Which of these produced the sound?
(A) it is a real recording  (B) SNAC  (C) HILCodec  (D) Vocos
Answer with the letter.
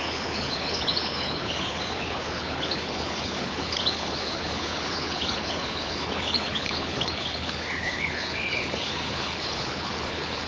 C